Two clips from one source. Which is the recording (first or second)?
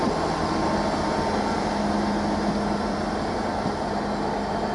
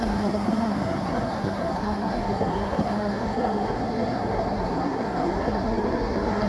first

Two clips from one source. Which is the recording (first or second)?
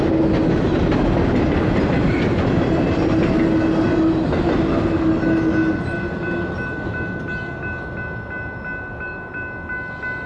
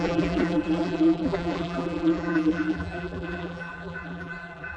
first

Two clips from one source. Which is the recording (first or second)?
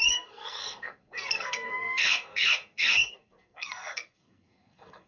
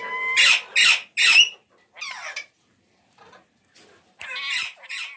second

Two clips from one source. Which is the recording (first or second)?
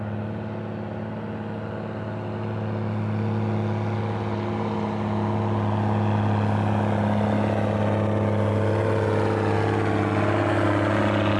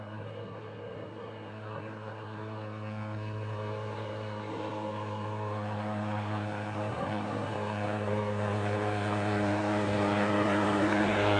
first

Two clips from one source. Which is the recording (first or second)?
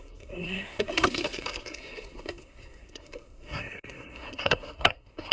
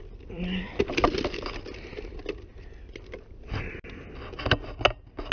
second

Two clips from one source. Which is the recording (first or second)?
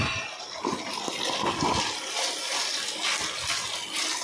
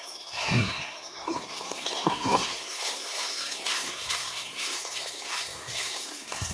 first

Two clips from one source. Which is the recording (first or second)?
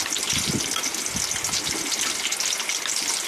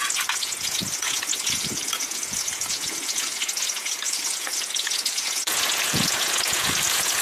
first